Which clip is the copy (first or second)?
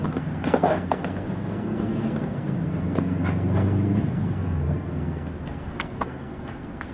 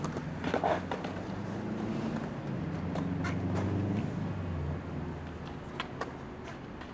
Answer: first